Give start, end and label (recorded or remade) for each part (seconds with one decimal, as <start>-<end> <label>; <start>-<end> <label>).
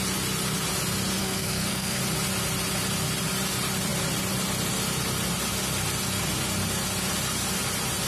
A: 0.0-1.2 recorded; 1.2-2.0 remade; 2.0-8.1 recorded